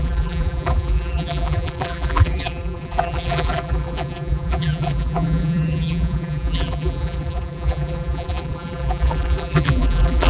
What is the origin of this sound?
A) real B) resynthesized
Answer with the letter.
B